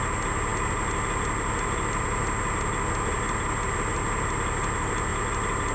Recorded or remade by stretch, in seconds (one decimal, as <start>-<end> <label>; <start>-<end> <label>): 0.0-5.7 recorded